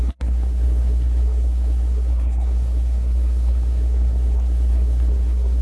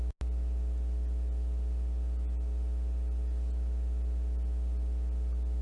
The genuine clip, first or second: second